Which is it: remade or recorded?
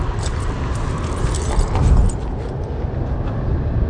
recorded